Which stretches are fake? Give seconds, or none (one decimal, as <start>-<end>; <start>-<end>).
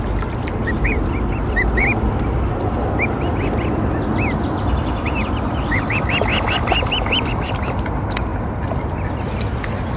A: none